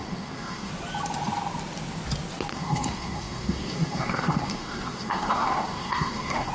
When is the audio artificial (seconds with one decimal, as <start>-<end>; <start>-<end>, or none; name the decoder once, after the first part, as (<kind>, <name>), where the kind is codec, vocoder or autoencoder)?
0.0-0.7 (codec, SNAC); 2.5-6.5